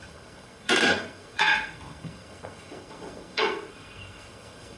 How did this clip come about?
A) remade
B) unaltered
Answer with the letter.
A